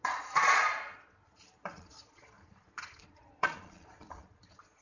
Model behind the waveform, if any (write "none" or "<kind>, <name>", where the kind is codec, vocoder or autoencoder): vocoder, Vocos